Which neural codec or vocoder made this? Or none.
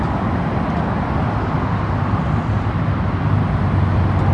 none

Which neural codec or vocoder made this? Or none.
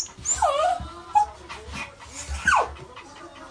none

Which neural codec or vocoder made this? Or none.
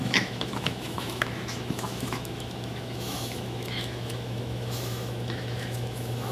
autoencoder, DAC-VAE